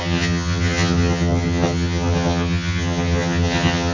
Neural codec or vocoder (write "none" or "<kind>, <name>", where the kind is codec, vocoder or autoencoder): vocoder, HiFi-GAN